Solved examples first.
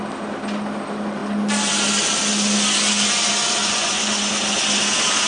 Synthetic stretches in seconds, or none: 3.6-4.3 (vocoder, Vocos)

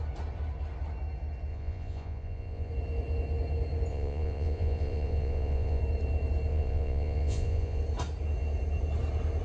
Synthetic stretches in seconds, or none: 1.5-2.7 (vocoder, Vocos); 3.9-5.8; 6.5-7.8

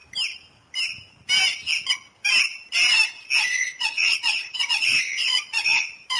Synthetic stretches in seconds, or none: 3.5-6.2 (vocoder, Vocos)

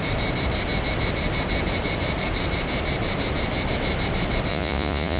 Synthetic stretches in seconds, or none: 4.5-5.2 (vocoder, Vocos)

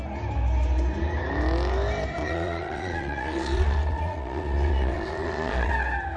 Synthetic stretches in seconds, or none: 2.2-5.7 (vocoder, Vocos)

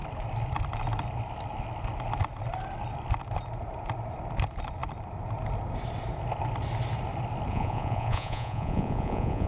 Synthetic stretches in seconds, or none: 7.5-9.5 (vocoder, Vocos)